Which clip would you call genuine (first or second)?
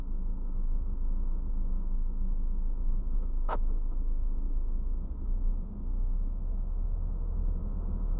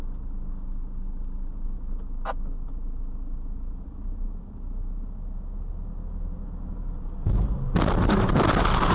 second